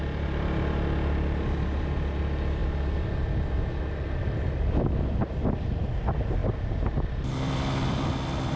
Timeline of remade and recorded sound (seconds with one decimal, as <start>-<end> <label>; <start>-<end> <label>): 0.0-8.6 recorded